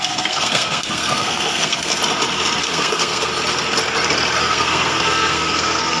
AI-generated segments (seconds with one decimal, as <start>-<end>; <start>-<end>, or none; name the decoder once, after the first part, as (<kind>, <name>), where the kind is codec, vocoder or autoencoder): 0.0-2.0 (codec, SNAC); 2.6-3.3; 4.4-6.0